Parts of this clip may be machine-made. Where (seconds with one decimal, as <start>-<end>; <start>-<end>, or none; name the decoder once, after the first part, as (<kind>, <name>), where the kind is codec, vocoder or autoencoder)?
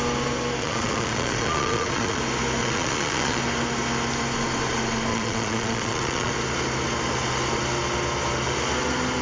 0.6-2.2 (vocoder, Vocos); 2.6-3.4; 5.1-6.3